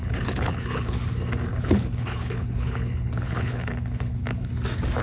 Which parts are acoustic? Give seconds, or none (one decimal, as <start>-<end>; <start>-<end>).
1.1-1.5; 4.5-5.0